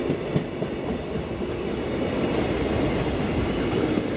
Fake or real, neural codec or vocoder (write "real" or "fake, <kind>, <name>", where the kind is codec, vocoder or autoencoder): real